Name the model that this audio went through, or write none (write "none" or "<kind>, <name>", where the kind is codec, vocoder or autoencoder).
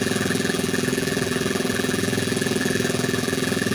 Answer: vocoder, BigVGAN v2